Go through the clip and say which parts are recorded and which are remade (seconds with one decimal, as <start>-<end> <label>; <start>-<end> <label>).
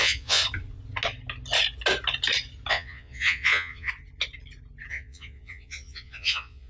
0.0-0.4 remade; 0.4-2.7 recorded; 2.7-3.9 remade; 3.9-4.9 recorded; 4.9-6.7 remade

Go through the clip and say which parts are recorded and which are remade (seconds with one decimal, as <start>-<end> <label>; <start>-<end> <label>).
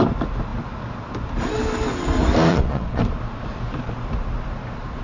0.0-2.5 recorded; 2.5-3.0 remade; 3.0-5.0 recorded